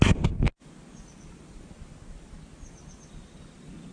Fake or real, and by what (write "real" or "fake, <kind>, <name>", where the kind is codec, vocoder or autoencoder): real